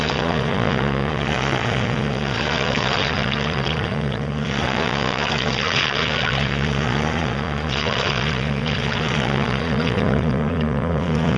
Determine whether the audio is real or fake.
fake